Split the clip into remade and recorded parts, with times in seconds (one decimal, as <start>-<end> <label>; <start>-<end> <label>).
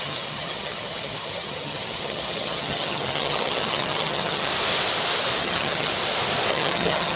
0.0-4.5 remade; 4.5-5.4 recorded; 5.4-5.9 remade; 5.9-6.5 recorded; 6.5-7.2 remade